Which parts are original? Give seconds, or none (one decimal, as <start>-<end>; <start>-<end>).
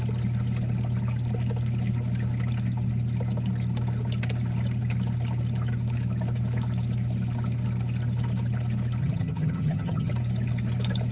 0.0-9.0; 10.1-11.1